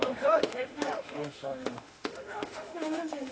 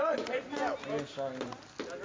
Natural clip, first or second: second